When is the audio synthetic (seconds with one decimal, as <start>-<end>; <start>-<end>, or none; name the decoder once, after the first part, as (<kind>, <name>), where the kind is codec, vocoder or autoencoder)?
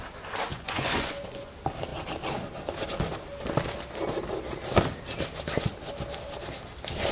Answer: 0.5-1.5 (vocoder, Vocos)